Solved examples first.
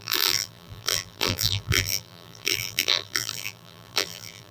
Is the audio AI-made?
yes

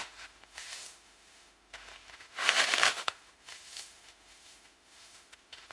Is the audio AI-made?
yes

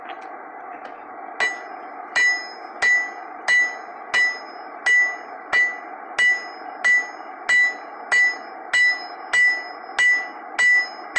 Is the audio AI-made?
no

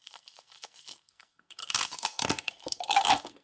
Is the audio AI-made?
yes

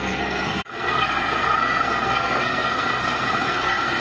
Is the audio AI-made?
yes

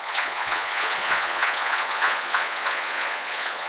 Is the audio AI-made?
yes